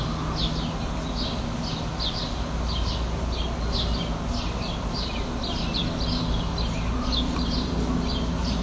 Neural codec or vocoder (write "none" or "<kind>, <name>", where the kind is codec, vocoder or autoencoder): none